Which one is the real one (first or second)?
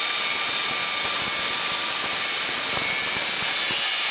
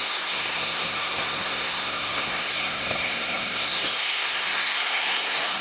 first